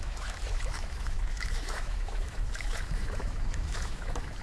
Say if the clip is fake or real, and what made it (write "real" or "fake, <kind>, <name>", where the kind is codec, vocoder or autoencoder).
fake, autoencoder, DAC-VAE